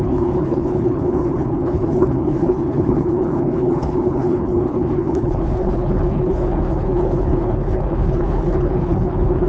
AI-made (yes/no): yes